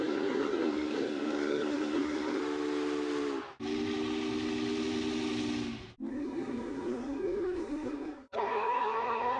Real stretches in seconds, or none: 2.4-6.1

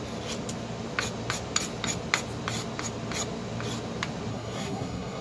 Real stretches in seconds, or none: 0.0-4.3

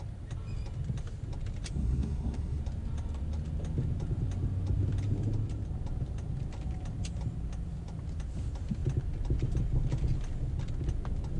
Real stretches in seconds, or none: 0.0-1.8; 2.6-11.4

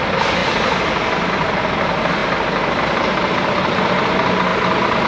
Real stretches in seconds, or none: 0.0-5.1

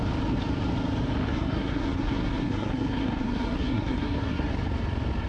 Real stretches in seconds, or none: 0.0-1.3; 4.5-5.3

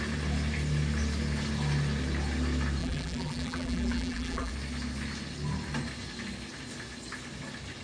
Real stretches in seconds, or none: 0.0-2.8; 4.5-7.8